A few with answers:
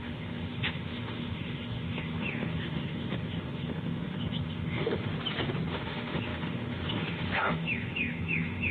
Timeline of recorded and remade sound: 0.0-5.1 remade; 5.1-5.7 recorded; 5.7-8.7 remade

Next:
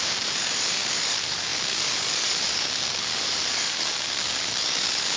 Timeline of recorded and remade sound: 0.0-5.2 remade

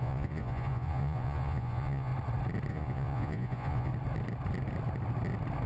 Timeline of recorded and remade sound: 0.0-2.1 remade; 2.1-2.7 recorded; 2.7-3.9 remade; 3.9-5.7 recorded

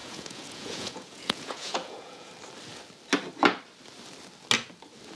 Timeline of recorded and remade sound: 0.0-2.3 remade; 2.3-5.1 recorded

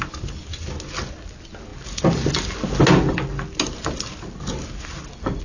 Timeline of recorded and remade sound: 0.0-5.4 recorded

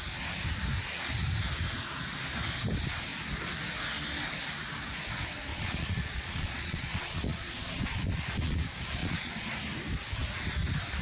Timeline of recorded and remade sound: 0.0-5.5 recorded; 5.5-8.6 remade; 8.6-9.0 recorded; 9.0-9.5 remade; 9.5-11.0 recorded